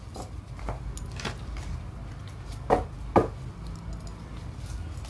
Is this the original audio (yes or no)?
yes